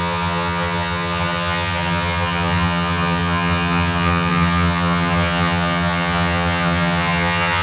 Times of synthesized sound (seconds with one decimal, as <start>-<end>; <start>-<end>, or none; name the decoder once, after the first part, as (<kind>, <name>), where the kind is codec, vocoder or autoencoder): 0.0-7.6 (vocoder, HiFi-GAN)